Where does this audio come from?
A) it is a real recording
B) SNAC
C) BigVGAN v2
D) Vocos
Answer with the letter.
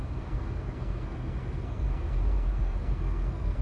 B